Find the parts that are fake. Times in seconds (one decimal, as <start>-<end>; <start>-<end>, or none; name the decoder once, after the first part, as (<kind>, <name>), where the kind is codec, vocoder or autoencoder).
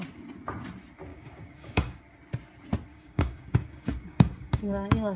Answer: 1.1-2.0 (codec, DAC); 2.9-5.2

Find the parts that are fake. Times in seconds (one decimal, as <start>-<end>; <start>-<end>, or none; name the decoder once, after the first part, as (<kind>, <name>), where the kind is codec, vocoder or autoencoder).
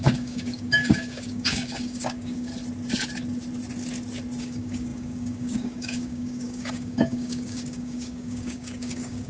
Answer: 0.0-2.5 (codec, DAC); 4.4-9.3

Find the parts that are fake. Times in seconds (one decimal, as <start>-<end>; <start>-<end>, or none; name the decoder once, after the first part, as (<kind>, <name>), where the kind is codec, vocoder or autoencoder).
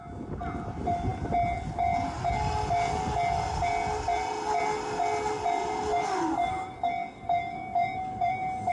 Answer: 5.9-8.7 (codec, DAC)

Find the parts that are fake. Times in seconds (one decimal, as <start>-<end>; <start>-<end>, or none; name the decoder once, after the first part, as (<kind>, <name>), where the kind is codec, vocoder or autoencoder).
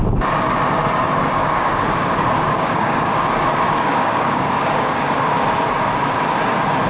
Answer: 1.4-5.2 (codec, DAC)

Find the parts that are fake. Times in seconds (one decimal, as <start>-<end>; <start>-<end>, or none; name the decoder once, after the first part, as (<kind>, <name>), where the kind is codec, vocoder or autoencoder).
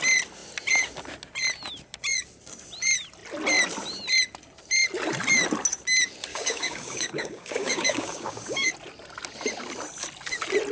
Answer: 6.3-8.7 (codec, DAC)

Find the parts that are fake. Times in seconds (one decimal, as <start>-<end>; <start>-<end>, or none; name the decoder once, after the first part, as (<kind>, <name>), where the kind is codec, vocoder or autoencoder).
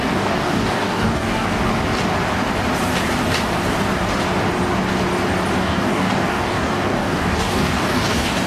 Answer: 0.0-1.7 (codec, DAC); 5.6-8.5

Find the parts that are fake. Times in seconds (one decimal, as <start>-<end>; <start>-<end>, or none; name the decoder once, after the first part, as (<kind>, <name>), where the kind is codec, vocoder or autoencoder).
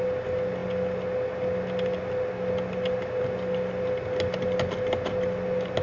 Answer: none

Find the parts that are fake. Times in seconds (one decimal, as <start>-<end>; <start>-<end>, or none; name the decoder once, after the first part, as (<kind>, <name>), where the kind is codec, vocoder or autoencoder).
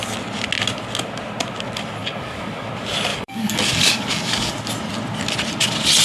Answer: 2.0-2.7 (codec, DAC); 3.1-4.5